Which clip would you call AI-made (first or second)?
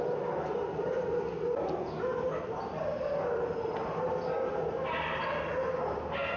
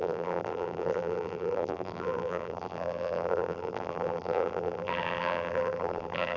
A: second